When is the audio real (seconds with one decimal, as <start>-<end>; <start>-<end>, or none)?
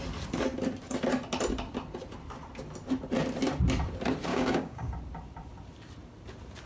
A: 0.0-4.3; 4.9-6.7